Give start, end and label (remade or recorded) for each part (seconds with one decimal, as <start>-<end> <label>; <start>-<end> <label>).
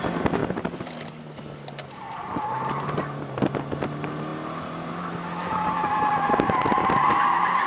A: 0.0-7.7 recorded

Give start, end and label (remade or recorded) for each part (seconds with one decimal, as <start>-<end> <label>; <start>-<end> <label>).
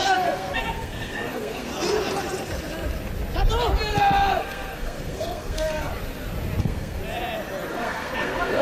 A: 0.0-1.7 remade; 1.7-4.4 recorded; 4.4-5.9 remade; 5.9-6.6 recorded; 6.6-7.0 remade; 7.0-7.7 recorded; 7.7-8.6 remade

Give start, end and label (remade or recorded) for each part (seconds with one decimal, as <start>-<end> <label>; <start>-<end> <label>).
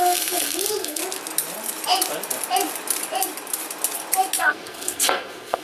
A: 0.0-1.0 remade; 1.0-4.4 recorded; 4.4-5.6 remade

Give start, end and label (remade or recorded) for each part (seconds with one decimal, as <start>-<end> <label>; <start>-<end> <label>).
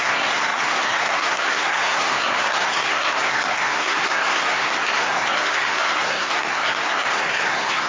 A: 0.0-7.9 remade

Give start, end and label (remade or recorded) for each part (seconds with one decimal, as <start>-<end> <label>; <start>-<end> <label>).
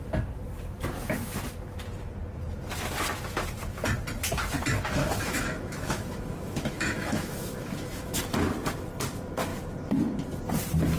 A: 0.0-5.0 recorded; 5.0-8.2 remade; 8.2-11.0 recorded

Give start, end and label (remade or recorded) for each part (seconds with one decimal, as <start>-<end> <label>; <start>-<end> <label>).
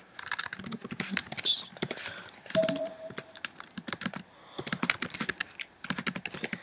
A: 0.0-1.2 recorded; 1.2-5.2 remade; 5.2-6.6 recorded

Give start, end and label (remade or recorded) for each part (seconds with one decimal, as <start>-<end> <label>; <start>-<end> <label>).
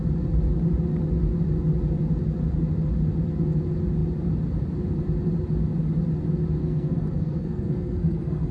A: 0.0-6.6 recorded; 6.6-8.5 remade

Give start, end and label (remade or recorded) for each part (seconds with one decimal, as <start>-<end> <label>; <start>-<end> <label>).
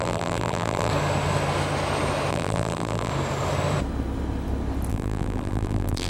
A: 0.0-0.9 remade; 0.9-2.3 recorded; 2.3-3.1 remade; 3.1-4.9 recorded; 4.9-6.1 remade